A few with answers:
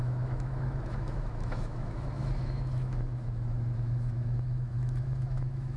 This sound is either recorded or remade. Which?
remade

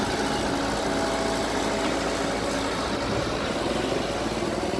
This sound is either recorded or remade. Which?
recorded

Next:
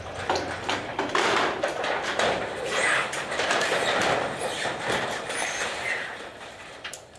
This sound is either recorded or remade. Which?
remade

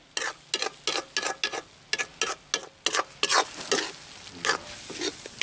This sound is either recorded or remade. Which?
recorded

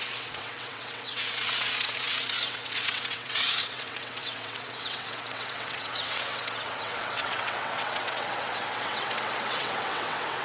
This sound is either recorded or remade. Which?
remade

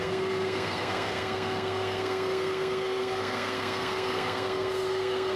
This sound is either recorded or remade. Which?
remade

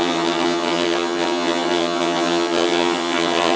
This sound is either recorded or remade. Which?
remade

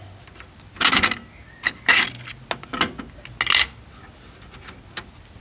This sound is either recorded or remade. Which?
recorded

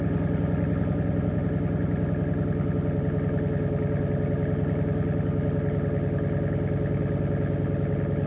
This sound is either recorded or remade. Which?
recorded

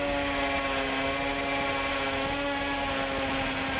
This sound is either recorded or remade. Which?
recorded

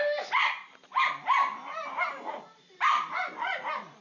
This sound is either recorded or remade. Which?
recorded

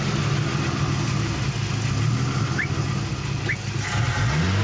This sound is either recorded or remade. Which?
recorded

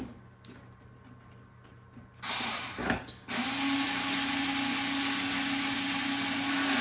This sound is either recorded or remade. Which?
recorded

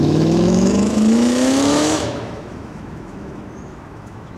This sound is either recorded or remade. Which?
remade